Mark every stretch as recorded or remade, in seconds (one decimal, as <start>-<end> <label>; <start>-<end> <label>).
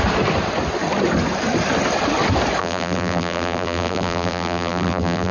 0.0-2.6 recorded; 2.6-5.3 remade